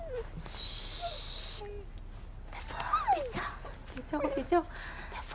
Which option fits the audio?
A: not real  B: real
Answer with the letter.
B